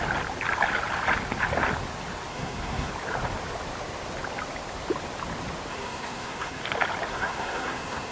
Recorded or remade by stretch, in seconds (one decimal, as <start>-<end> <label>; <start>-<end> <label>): 0.0-2.3 recorded; 2.3-2.9 remade; 2.9-5.7 recorded; 5.7-6.6 remade; 6.6-7.1 recorded; 7.1-8.1 remade